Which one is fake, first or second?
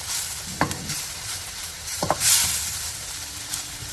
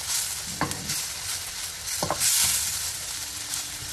first